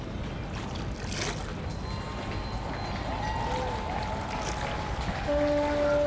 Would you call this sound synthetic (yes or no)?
no